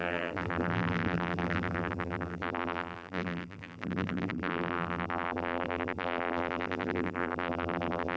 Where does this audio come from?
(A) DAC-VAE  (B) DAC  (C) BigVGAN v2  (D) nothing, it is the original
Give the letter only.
C